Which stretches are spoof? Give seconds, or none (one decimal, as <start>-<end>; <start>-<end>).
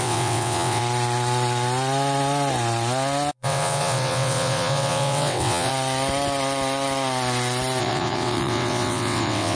0.0-0.8; 3.3-5.7; 7.8-9.5